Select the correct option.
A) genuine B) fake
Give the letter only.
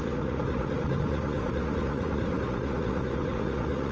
B